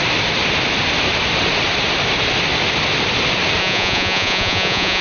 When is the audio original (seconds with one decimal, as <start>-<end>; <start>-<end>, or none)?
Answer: 0.0-3.6